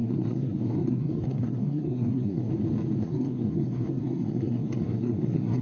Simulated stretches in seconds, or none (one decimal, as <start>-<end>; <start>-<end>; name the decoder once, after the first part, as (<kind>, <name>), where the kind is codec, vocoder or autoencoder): 0.0-2.5 (codec, SNAC); 3.0-5.6